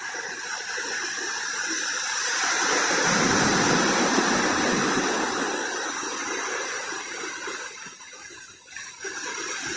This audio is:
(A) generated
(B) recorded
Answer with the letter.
A